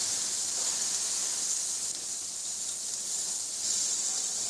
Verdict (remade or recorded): recorded